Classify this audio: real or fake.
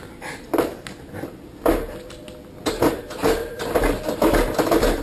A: real